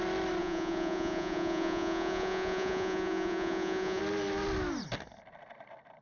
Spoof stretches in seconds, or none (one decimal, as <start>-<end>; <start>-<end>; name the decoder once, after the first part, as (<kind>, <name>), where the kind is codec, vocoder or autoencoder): 0.4-4.0 (vocoder, Vocos)